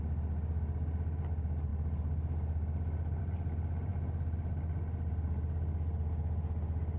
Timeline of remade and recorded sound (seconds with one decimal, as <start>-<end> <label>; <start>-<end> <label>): 0.0-7.0 recorded